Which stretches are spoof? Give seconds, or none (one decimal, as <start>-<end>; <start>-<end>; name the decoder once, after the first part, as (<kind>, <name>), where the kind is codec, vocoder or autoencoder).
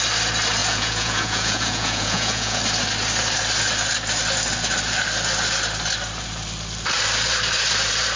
0.6-2.6 (vocoder, Vocos)